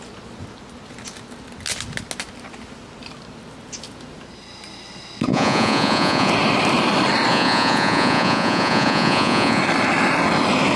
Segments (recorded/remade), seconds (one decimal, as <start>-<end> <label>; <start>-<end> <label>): 0.0-5.3 recorded; 5.3-6.3 remade; 6.3-7.3 recorded; 7.3-9.6 remade; 9.6-10.8 recorded